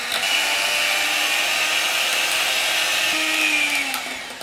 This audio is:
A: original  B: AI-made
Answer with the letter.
A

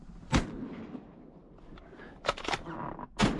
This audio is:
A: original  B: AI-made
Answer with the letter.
A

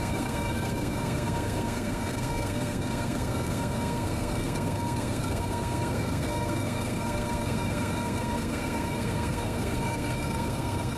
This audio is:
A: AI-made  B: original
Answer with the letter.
A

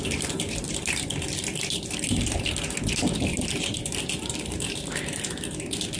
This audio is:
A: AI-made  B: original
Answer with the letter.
B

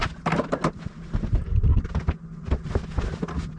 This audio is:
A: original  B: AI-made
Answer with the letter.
A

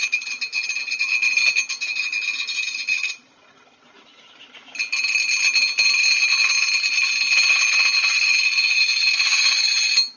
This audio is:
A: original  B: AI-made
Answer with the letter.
A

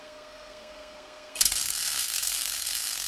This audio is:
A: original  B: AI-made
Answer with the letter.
B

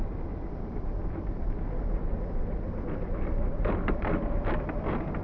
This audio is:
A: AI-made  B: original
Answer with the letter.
B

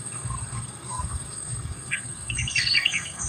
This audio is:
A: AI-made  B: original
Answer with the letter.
A